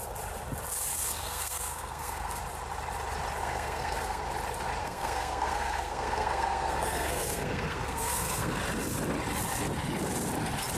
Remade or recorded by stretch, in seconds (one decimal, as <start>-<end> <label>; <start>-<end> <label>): 0.0-0.9 recorded; 0.9-2.4 remade; 2.4-3.4 recorded; 3.4-4.2 remade; 4.2-4.8 recorded; 4.8-8.6 remade; 8.6-10.8 recorded